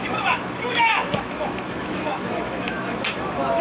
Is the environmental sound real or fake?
fake